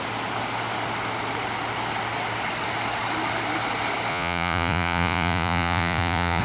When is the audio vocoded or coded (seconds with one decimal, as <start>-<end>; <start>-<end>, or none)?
4.1-6.4